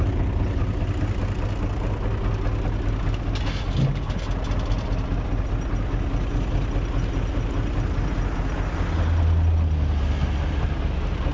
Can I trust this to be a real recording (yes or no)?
yes